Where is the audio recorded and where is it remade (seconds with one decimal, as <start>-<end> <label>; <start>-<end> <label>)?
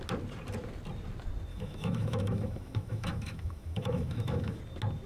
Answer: 0.0-1.5 recorded; 1.5-4.6 remade; 4.6-5.1 recorded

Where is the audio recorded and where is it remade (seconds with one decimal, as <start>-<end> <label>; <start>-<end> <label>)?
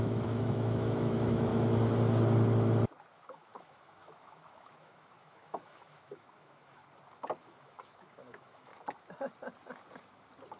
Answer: 0.0-1.5 remade; 1.5-3.1 recorded; 3.1-6.8 remade; 6.8-7.4 recorded; 7.4-8.7 remade; 8.7-10.6 recorded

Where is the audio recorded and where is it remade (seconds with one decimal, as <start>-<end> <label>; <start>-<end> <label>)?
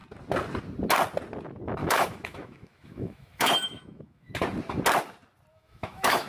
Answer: 0.0-1.8 recorded; 1.8-4.3 remade; 4.3-5.5 recorded; 5.5-6.3 remade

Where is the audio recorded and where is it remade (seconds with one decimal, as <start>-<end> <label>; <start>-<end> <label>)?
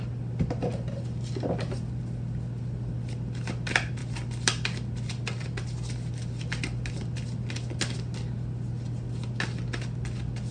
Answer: 0.0-10.5 recorded